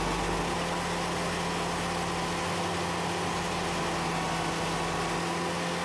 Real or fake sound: real